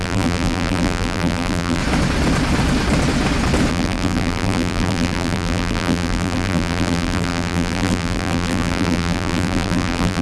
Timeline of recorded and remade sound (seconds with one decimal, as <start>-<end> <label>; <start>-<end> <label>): 0.0-1.8 remade; 1.8-3.7 recorded; 3.7-10.2 remade

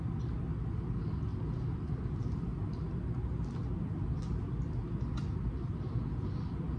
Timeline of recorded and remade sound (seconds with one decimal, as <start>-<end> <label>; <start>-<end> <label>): 0.0-6.8 recorded

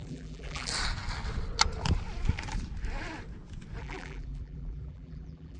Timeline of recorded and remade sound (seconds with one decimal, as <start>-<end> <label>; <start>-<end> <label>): 0.0-0.7 remade; 0.7-3.8 recorded; 3.8-5.6 remade

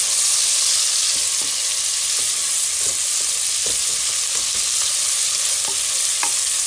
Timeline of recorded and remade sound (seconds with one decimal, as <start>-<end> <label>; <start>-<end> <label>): 0.0-6.7 recorded

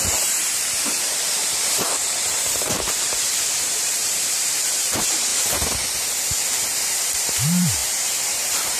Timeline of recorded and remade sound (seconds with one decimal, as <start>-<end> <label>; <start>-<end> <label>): 0.0-5.3 remade; 5.3-6.9 recorded; 6.9-8.8 remade